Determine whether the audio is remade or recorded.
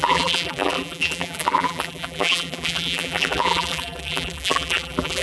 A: remade